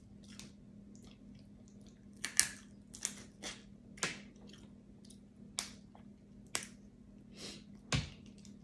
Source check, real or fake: real